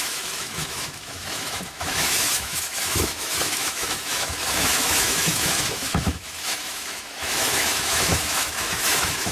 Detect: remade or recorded remade